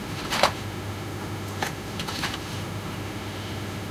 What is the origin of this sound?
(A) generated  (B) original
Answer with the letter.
A